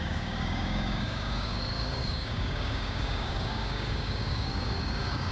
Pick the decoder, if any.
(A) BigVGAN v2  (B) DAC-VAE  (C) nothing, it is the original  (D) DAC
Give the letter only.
D